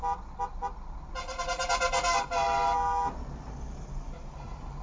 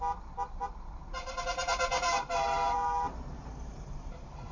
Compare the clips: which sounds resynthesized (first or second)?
second